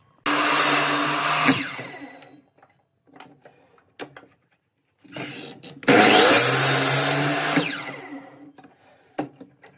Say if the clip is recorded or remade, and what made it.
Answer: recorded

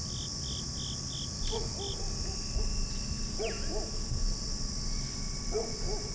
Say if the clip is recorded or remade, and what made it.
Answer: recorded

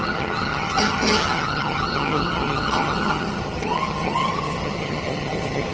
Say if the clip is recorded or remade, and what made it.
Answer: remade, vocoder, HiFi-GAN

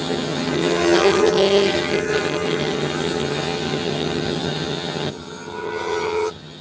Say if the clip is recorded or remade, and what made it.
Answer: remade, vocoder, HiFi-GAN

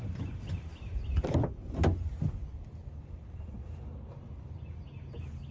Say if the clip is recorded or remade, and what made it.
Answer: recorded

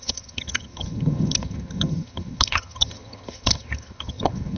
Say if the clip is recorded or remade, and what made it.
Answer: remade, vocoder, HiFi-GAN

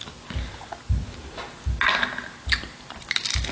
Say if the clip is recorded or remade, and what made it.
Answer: recorded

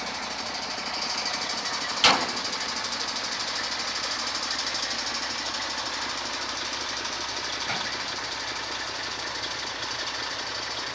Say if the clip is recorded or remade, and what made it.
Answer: recorded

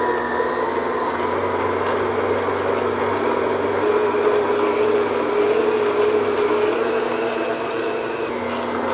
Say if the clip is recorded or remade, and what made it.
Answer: recorded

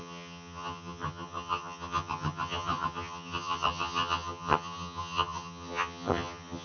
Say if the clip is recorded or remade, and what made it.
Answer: remade, vocoder, HiFi-GAN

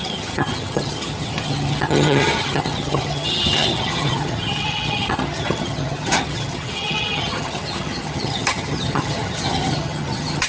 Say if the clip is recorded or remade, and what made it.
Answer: remade, vocoder, HiFi-GAN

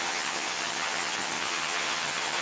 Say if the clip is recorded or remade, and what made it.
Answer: remade, vocoder, HiFi-GAN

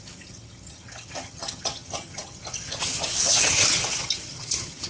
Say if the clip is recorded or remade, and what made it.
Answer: remade, vocoder, HiFi-GAN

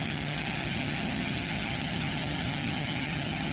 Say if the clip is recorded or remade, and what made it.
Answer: remade, vocoder, HiFi-GAN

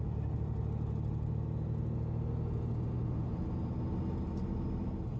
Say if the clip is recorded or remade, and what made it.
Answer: recorded